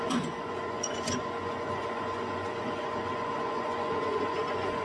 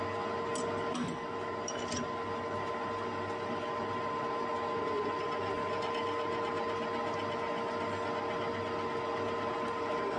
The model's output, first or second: first